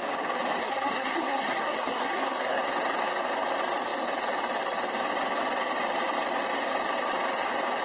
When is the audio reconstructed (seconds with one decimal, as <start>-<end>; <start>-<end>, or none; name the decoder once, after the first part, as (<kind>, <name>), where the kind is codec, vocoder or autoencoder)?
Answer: 0.6-2.6 (codec, SNAC)